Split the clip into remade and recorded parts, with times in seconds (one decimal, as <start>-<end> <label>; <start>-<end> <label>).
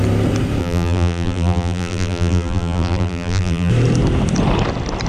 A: 0.0-0.6 recorded; 0.6-3.7 remade; 3.7-5.1 recorded